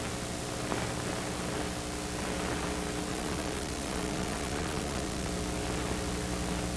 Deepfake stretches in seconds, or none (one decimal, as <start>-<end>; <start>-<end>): 3.1-5.3